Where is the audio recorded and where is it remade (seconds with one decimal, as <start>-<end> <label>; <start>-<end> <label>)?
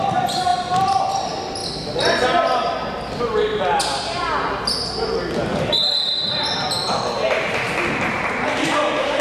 0.0-0.5 recorded; 0.5-1.0 remade; 1.0-3.5 recorded; 3.5-4.6 remade; 4.6-9.2 recorded